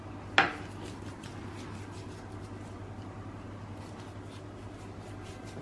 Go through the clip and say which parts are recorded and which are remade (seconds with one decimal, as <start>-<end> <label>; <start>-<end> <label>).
0.0-5.6 recorded